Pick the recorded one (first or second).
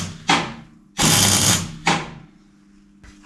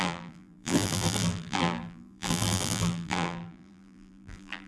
first